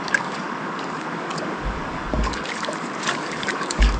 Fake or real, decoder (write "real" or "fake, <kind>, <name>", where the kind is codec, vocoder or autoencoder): fake, codec, DAC